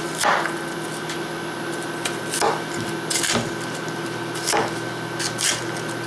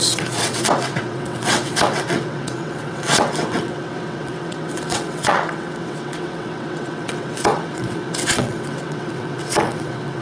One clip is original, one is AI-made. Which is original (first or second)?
first